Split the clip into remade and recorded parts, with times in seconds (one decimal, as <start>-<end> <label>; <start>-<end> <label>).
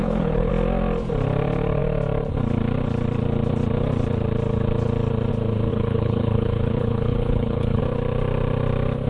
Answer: 0.0-0.5 remade; 0.5-5.7 recorded; 5.7-7.8 remade; 7.8-9.1 recorded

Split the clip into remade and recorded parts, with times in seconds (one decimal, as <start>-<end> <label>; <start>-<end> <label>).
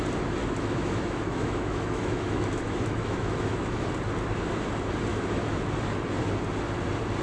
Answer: 0.0-0.4 recorded; 0.4-3.9 remade; 3.9-5.1 recorded; 5.1-5.6 remade; 5.6-7.2 recorded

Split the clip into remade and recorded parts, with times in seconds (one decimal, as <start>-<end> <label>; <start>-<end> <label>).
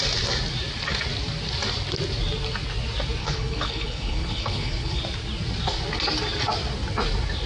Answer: 0.0-3.2 recorded; 3.2-5.0 remade; 5.0-7.5 recorded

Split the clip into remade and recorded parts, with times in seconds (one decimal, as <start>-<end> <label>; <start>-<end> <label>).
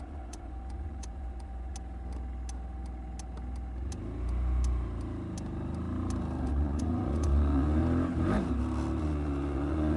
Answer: 0.0-1.7 remade; 1.7-6.5 recorded; 6.5-7.8 remade; 7.8-9.0 recorded; 9.0-10.0 remade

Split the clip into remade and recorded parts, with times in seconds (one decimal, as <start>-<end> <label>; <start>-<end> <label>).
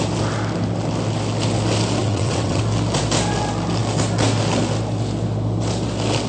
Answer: 0.0-2.0 recorded; 2.0-2.6 remade; 2.6-6.3 recorded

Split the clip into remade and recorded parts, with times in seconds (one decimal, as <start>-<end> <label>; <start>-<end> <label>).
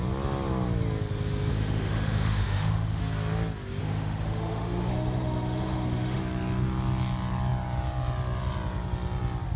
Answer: 0.0-1.5 recorded; 1.5-3.0 remade; 3.0-3.8 recorded; 3.8-6.2 remade; 6.2-9.6 recorded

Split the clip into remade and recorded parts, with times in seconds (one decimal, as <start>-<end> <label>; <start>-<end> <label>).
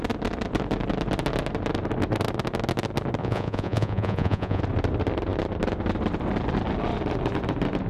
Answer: 0.0-3.2 recorded; 3.2-4.6 remade; 4.6-7.9 recorded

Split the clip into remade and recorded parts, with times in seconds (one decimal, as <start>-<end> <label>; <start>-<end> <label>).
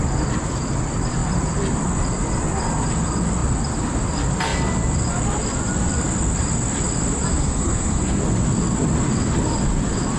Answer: 0.0-7.4 recorded; 7.4-8.2 remade; 8.2-10.2 recorded